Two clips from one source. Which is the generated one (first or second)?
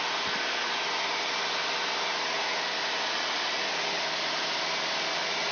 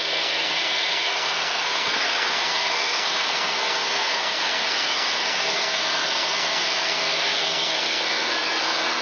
second